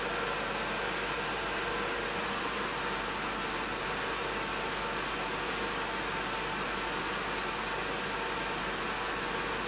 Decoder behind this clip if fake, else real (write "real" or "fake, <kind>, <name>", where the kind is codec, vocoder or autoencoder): real